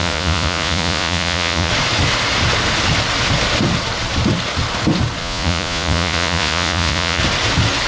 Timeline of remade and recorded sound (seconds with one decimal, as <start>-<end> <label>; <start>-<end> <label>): 0.0-1.7 remade; 1.7-5.2 recorded; 5.2-7.2 remade; 7.2-7.9 recorded